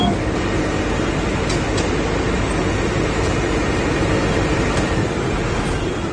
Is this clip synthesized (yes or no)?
no